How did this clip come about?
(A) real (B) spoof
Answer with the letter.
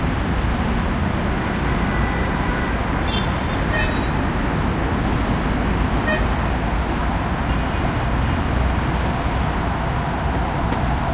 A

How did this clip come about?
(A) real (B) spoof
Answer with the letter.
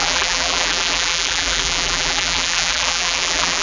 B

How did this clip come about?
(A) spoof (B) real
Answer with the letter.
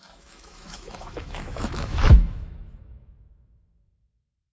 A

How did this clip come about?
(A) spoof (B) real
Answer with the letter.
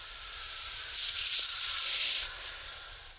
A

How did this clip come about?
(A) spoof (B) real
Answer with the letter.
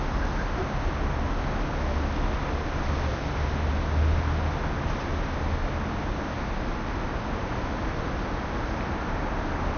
B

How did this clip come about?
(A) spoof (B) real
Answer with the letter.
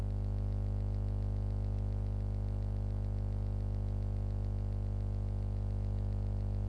B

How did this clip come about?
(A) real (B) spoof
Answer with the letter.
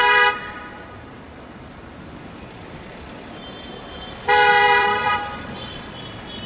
B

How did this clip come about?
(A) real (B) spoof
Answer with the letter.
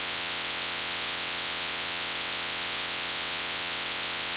B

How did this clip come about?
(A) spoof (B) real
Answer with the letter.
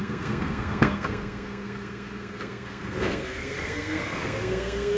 A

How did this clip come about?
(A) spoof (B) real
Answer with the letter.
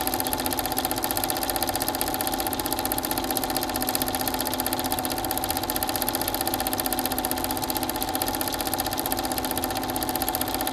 B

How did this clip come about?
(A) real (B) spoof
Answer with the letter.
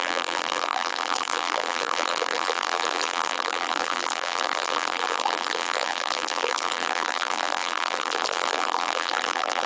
B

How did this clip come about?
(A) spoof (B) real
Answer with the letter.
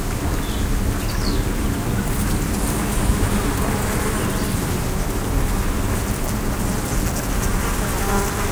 B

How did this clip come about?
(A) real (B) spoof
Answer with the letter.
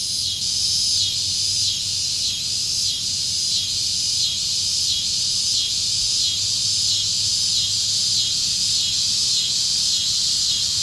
A